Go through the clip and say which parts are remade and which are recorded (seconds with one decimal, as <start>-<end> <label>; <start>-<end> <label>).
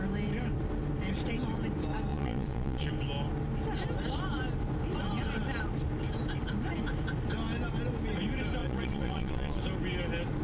0.0-2.1 recorded; 2.1-2.9 remade; 2.9-8.6 recorded; 8.6-9.6 remade; 9.6-10.4 recorded